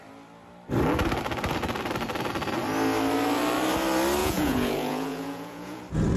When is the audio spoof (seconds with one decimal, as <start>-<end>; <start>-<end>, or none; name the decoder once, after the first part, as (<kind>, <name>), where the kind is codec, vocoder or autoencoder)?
4.2-5.8 (vocoder, Vocos)

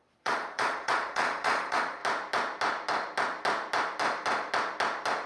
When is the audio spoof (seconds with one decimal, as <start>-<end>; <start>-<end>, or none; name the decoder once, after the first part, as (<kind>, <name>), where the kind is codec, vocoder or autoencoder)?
0.0-2.0 (vocoder, Vocos)

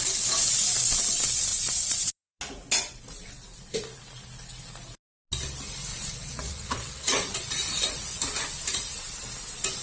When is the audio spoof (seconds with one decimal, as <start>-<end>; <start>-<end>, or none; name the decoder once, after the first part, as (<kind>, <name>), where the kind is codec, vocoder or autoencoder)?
1.5-2.4 (vocoder, Vocos); 5.9-8.2

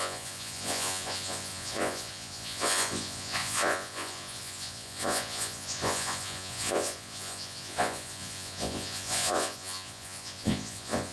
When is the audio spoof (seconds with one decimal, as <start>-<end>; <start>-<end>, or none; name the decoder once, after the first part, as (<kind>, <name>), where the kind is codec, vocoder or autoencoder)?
0.0-11.1 (vocoder, Vocos)